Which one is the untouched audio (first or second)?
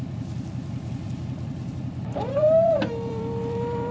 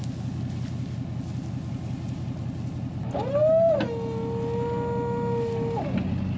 second